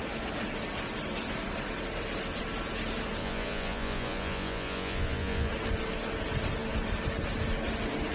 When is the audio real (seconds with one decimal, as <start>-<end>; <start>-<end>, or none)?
0.0-3.2; 5.5-8.1